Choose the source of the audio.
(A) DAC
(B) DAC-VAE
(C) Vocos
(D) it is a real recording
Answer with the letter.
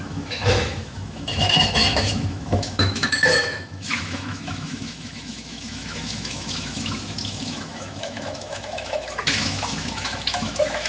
B